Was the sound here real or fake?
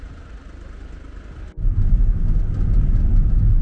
real